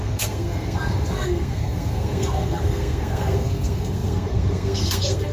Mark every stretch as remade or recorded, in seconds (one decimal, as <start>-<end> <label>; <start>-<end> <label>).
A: 0.0-5.3 remade